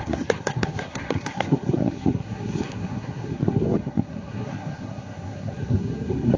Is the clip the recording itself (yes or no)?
no